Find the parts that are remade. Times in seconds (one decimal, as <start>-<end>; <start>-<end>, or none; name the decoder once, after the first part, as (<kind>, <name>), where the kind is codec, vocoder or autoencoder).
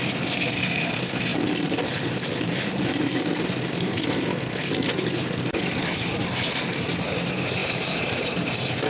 1.3-3.2 (vocoder, BigVGAN v2); 7.6-8.5